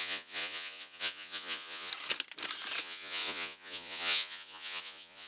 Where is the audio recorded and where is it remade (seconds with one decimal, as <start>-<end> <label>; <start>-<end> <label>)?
0.0-1.9 remade; 1.9-2.8 recorded; 2.8-5.3 remade